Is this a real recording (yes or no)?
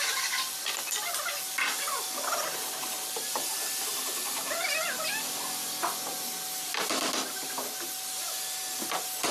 yes